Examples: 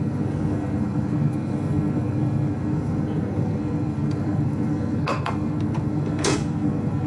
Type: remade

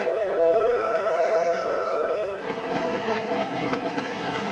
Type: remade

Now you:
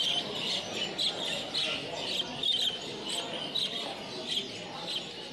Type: recorded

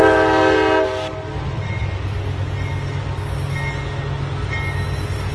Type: recorded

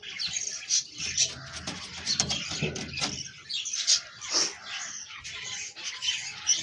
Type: recorded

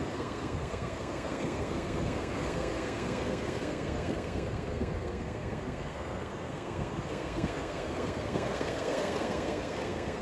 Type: remade